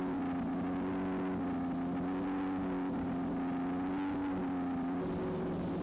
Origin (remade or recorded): recorded